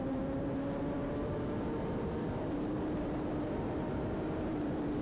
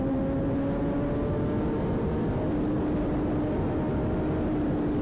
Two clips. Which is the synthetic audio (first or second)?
first